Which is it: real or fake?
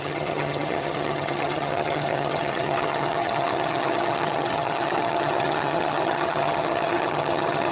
fake